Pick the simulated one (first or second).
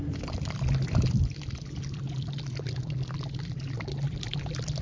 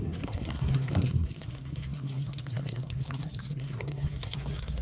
second